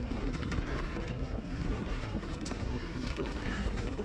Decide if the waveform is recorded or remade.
remade